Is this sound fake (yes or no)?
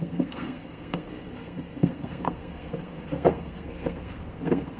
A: yes